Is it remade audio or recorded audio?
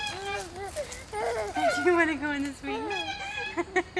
recorded